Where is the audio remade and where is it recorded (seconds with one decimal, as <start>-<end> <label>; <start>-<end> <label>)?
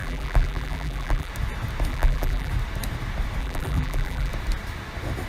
0.0-1.3 remade; 1.3-1.9 recorded; 1.9-2.5 remade; 2.5-3.4 recorded; 3.4-4.3 remade; 4.3-5.3 recorded